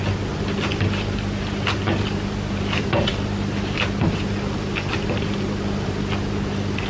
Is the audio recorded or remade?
recorded